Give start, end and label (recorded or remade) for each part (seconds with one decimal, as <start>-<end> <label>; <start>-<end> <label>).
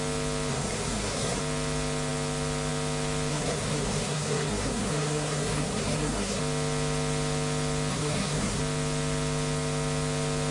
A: 0.0-0.5 recorded; 0.5-1.4 remade; 1.4-3.3 recorded; 3.3-6.4 remade; 6.4-7.9 recorded; 7.9-8.6 remade; 8.6-10.5 recorded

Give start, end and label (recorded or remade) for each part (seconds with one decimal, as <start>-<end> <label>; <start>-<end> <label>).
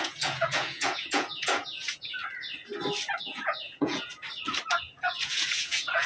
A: 0.0-2.2 remade; 2.2-3.2 recorded; 3.2-4.1 remade; 4.1-5.0 recorded; 5.0-6.1 remade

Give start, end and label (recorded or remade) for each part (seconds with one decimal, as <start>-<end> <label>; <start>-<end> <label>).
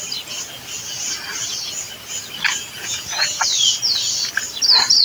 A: 0.0-2.5 recorded; 2.5-3.4 remade; 3.4-5.0 recorded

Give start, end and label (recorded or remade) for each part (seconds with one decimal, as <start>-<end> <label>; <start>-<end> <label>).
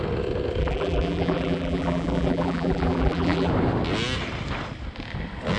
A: 0.0-0.6 recorded; 0.6-3.5 remade; 3.5-5.6 recorded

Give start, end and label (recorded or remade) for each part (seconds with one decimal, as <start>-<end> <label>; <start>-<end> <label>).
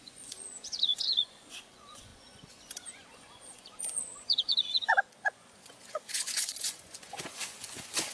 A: 0.0-8.1 remade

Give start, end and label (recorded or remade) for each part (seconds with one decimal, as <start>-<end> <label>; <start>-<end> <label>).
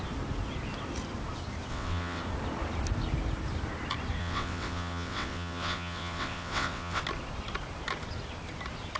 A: 0.0-1.7 recorded; 1.7-2.2 remade; 2.2-4.2 recorded; 4.2-7.0 remade; 7.0-9.0 recorded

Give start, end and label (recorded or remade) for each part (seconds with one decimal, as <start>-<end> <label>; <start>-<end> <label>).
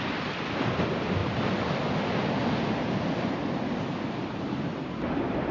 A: 0.0-1.2 remade; 1.2-4.0 recorded; 4.0-5.5 remade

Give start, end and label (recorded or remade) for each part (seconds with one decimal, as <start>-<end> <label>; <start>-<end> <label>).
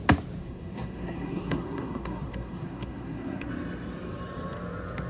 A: 0.0-0.4 recorded; 0.4-3.5 remade; 3.5-5.1 recorded